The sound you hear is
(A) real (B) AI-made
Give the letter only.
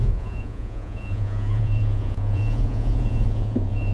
B